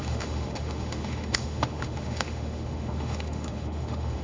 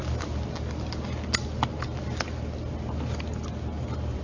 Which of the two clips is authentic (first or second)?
second